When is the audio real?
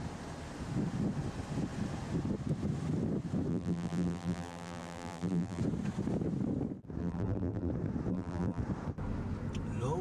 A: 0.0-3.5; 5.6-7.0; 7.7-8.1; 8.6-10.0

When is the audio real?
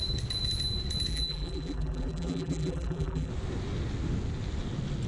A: 0.0-1.1; 3.3-5.1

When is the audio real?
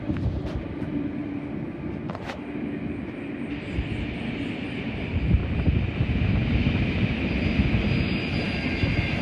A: 0.0-9.2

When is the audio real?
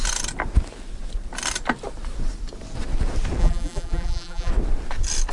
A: 0.0-3.4; 4.5-5.3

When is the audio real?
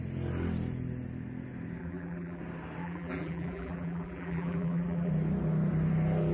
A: 0.0-1.8; 2.4-2.8; 5.1-6.3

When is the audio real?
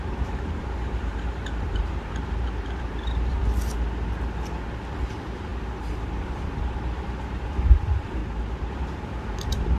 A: 3.4-5.1; 5.5-6.1; 8.2-8.7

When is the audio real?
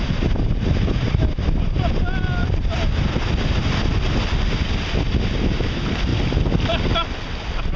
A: 0.0-2.4; 3.1-7.8